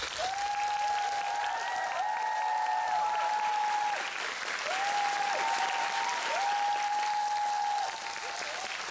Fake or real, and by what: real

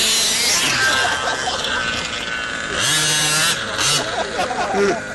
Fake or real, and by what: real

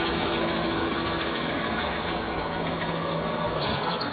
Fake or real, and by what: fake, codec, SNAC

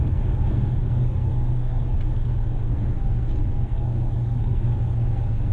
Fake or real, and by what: fake, codec, SNAC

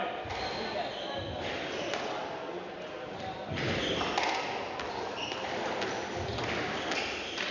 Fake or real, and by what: real